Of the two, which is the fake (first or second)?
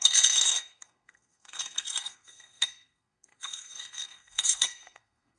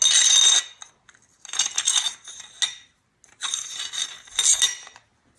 first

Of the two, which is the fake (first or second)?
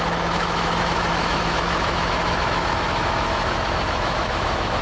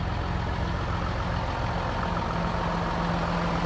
first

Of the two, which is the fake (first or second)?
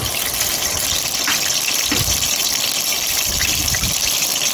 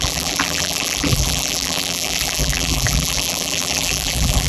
second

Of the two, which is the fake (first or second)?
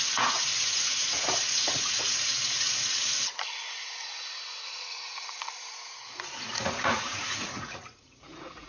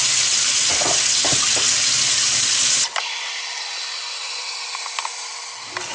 first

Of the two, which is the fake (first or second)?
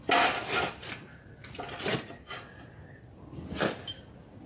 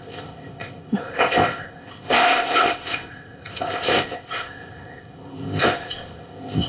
second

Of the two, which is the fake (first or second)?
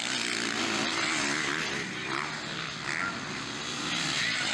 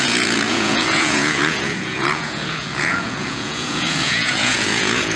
second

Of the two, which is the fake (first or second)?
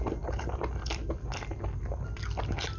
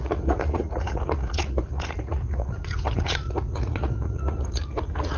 second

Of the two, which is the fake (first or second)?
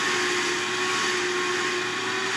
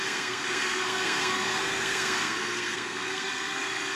second